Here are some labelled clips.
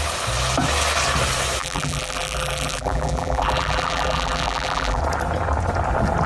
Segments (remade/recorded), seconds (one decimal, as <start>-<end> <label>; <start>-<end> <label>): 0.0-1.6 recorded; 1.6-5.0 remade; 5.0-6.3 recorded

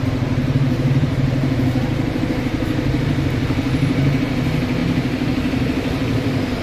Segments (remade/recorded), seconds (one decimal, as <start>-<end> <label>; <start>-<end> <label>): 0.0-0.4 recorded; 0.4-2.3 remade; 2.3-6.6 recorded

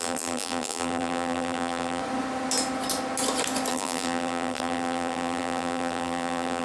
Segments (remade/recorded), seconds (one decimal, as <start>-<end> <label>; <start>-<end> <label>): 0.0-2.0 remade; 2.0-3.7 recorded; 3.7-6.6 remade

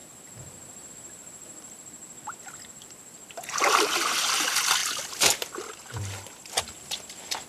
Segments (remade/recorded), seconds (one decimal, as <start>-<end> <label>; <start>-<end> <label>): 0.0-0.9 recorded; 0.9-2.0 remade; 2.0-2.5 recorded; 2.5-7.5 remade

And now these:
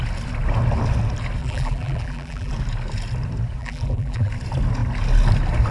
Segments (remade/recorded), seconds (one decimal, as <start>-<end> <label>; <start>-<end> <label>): 0.0-1.4 recorded; 1.4-2.5 remade; 2.5-3.6 recorded; 3.6-4.3 remade; 4.3-5.7 recorded

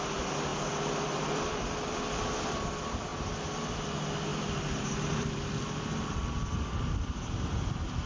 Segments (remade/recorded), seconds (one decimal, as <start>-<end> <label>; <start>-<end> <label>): 0.0-0.5 recorded; 0.5-2.5 remade; 2.5-4.3 recorded; 4.3-5.4 remade; 5.4-8.1 recorded

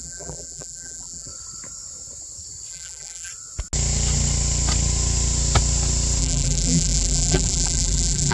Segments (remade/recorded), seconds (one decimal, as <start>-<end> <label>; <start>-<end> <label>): 0.0-1.3 remade; 1.3-2.7 recorded; 2.7-3.3 remade; 3.3-6.2 recorded; 6.2-8.3 remade